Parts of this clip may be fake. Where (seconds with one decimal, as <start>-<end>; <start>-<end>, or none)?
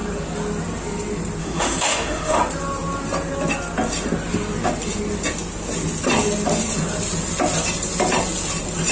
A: 1.4-2.4